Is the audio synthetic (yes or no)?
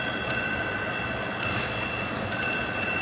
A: yes